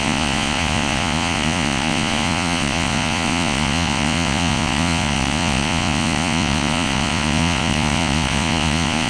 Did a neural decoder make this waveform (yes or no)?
yes